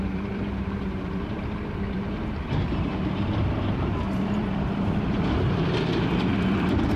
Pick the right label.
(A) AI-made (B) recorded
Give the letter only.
A